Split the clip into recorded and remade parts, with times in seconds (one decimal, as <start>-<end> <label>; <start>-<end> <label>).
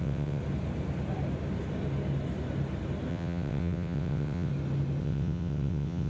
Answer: 0.0-0.4 remade; 0.4-3.1 recorded; 3.1-4.5 remade; 4.5-5.0 recorded; 5.0-6.1 remade